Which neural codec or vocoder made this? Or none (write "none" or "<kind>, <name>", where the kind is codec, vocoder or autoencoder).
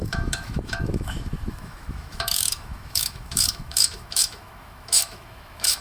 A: autoencoder, DAC-VAE